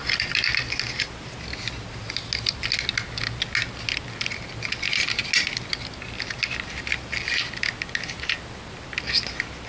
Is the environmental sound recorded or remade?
recorded